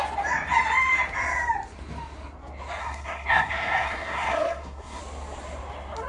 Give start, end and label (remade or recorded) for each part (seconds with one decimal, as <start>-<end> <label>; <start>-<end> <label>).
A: 0.0-2.8 recorded; 2.8-5.0 remade; 5.0-6.1 recorded